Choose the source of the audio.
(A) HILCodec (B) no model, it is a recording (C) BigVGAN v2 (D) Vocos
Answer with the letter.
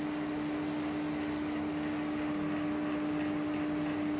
B